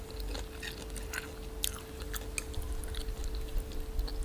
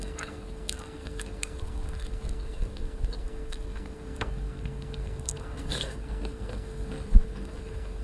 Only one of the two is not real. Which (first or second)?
second